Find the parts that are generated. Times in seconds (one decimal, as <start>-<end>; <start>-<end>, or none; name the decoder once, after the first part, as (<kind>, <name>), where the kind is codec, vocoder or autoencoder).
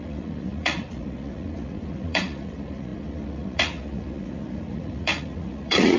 0.0-6.0 (vocoder, Vocos)